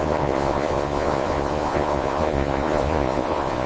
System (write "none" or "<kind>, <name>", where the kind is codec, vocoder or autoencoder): vocoder, Vocos